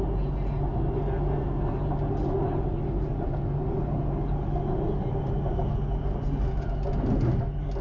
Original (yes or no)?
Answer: yes